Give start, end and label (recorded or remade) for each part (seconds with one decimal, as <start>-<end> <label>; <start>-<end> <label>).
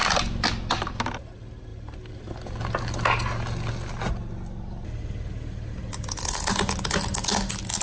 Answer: 0.0-7.8 recorded